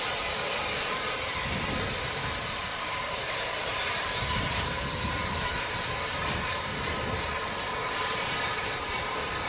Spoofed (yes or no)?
yes